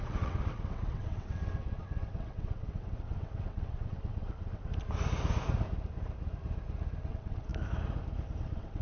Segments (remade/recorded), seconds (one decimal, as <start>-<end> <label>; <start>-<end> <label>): 0.0-4.7 remade; 4.7-7.1 recorded; 7.1-7.5 remade; 7.5-8.4 recorded; 8.4-8.8 remade